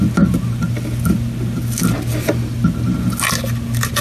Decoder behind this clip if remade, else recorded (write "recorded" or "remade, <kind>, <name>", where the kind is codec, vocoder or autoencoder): recorded